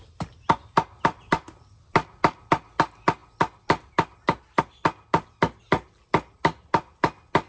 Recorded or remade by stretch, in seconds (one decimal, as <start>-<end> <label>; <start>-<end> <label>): 0.0-7.5 recorded